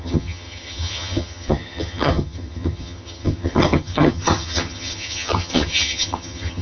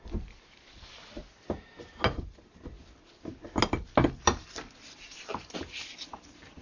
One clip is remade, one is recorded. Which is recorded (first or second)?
second